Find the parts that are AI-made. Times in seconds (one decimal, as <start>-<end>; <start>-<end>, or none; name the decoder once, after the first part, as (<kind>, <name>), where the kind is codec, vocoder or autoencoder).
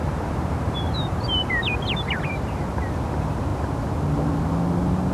0.0-1.7 (vocoder, BigVGAN v2)